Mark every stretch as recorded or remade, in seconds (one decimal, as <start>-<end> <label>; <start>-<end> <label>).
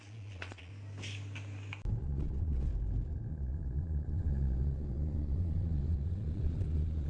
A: 0.0-0.7 remade; 0.7-2.0 recorded; 2.0-2.7 remade; 2.7-3.3 recorded; 3.3-7.1 remade